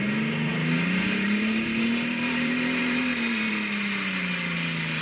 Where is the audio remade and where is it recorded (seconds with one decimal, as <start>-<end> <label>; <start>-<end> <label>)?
0.0-0.5 recorded; 0.5-3.5 remade; 3.5-5.0 recorded